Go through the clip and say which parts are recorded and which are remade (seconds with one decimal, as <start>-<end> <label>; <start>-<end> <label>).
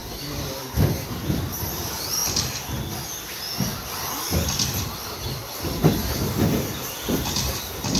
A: 0.0-0.6 remade; 0.6-2.2 recorded; 2.2-2.9 remade; 2.9-3.7 recorded; 3.7-7.2 remade; 7.2-8.0 recorded